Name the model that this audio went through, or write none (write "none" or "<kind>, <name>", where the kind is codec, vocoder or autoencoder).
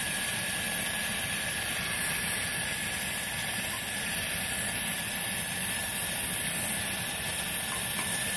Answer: none